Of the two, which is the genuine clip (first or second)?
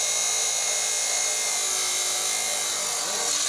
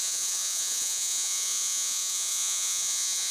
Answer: first